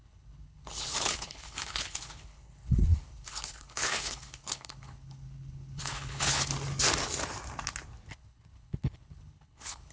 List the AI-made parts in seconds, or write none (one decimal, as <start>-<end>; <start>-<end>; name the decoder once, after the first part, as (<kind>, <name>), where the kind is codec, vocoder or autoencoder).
0.0-6.5 (codec, HILCodec); 8.1-9.9